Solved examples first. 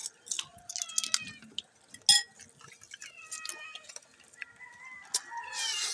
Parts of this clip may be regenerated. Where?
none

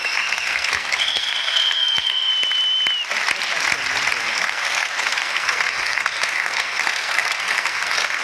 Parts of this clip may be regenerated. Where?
0.0-2.3 (codec, SNAC); 4.2-8.2

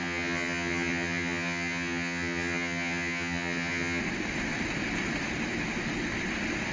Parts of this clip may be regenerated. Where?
0.0-4.0 (vocoder, HiFi-GAN)